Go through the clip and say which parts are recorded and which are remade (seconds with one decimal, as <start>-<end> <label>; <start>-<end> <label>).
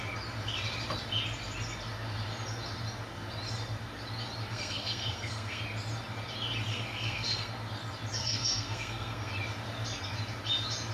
0.0-4.5 recorded; 4.5-5.6 remade; 5.6-6.7 recorded; 6.7-7.5 remade; 7.5-8.2 recorded; 8.2-9.3 remade; 9.3-10.9 recorded